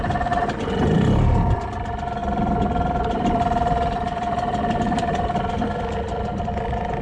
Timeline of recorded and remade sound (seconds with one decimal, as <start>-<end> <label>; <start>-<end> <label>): 0.0-2.2 recorded; 2.2-6.4 remade; 6.4-7.0 recorded